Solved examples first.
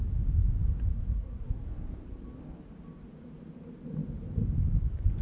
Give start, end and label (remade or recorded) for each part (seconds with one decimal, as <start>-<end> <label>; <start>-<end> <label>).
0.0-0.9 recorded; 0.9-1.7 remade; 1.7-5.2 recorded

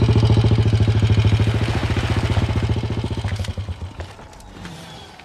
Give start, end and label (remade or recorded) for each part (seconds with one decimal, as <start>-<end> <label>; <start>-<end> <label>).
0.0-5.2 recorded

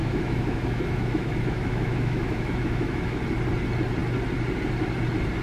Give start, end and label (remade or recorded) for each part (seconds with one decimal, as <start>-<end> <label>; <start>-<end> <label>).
0.0-3.2 remade; 3.2-5.4 recorded

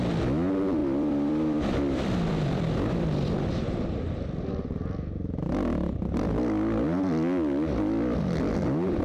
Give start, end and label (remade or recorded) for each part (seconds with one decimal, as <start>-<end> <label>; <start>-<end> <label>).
0.0-0.8 recorded; 0.8-5.1 remade; 5.1-9.0 recorded

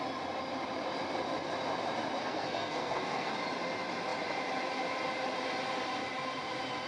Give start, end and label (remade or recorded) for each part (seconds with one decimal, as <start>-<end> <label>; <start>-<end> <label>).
0.0-2.2 recorded; 2.2-3.3 remade; 3.3-6.9 recorded

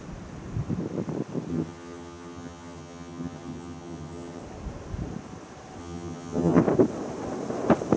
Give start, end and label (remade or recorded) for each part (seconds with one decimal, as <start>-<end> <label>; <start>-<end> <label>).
0.0-1.5 recorded; 1.5-4.4 remade; 4.4-5.8 recorded; 5.8-6.6 remade; 6.6-8.0 recorded

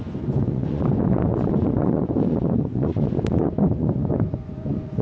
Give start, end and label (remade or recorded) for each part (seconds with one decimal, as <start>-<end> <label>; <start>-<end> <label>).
0.0-5.0 remade